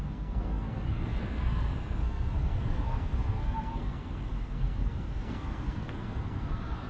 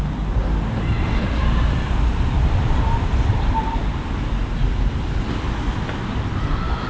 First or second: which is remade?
first